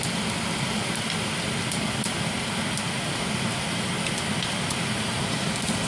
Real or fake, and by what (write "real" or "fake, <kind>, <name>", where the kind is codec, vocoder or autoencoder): real